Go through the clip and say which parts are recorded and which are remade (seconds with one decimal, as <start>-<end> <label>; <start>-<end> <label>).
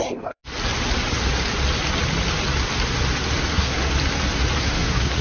0.0-0.4 remade; 0.4-3.5 recorded; 3.5-3.9 remade; 3.9-4.6 recorded; 4.6-5.2 remade